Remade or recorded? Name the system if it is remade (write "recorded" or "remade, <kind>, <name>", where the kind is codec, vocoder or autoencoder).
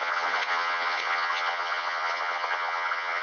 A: remade, vocoder, Vocos